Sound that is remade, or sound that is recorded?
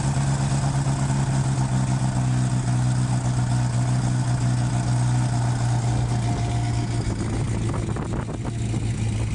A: recorded